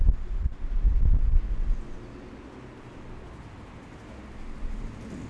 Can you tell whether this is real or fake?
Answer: real